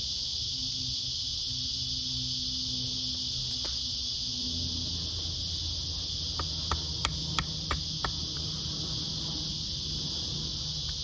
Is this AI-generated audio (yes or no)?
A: no